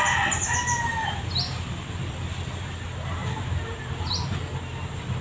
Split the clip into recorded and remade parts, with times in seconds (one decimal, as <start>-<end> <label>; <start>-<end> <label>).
0.0-5.2 recorded